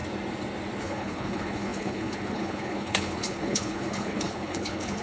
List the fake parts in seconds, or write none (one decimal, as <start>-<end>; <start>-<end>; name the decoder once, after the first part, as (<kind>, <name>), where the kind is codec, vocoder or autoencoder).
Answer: 0.8-5.0 (codec, HILCodec)